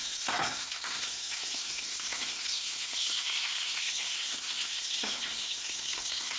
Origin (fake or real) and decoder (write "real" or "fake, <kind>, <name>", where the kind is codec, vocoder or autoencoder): fake, codec, SNAC